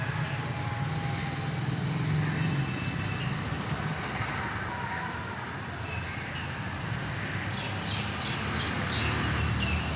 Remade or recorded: recorded